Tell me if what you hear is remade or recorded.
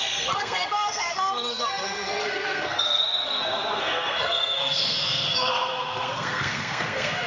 remade